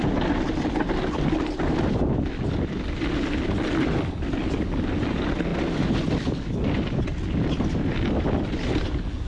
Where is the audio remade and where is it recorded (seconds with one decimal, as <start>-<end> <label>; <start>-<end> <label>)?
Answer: 0.0-9.3 recorded